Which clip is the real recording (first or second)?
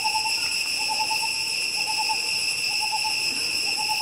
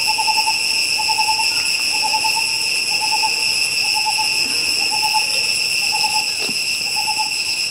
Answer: second